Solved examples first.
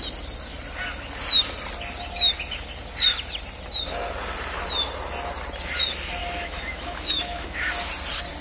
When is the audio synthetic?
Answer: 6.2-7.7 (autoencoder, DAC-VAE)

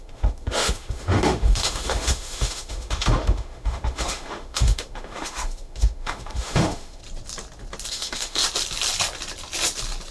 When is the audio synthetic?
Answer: 0.0-7.0 (autoencoder, DAC-VAE); 7.9-8.4

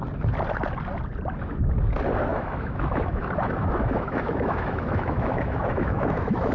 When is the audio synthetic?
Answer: 2.3-6.5 (autoencoder, DAC-VAE)

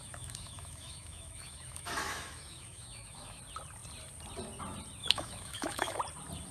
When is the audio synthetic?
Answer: 0.0-3.4 (autoencoder, DAC-VAE); 5.0-6.0